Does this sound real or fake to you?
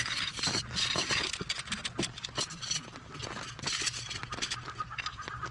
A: real